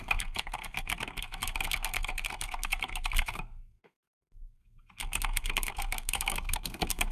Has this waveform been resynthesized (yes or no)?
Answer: yes